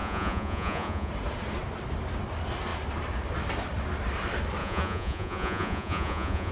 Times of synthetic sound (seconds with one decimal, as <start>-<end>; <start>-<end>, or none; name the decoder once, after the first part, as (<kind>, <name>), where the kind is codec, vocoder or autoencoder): 0.0-1.1 (vocoder, Vocos); 4.6-6.5